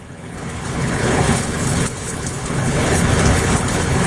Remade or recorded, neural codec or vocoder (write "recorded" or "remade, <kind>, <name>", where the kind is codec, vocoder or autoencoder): remade, codec, HILCodec